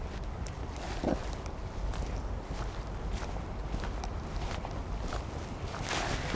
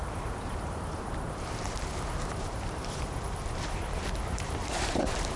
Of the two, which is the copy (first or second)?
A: second